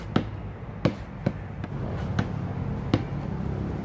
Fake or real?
real